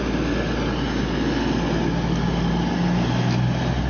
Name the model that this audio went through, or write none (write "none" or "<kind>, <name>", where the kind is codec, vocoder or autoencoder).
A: none